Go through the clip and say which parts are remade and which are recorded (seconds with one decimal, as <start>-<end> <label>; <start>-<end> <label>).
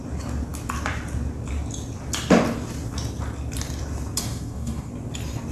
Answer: 0.0-4.2 recorded; 4.2-4.9 remade; 4.9-5.5 recorded